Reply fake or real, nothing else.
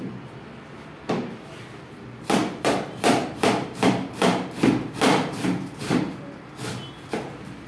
fake